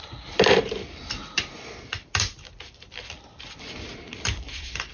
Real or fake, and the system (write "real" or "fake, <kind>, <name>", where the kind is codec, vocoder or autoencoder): fake, vocoder, BigVGAN v2